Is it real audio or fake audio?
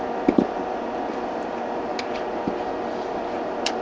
real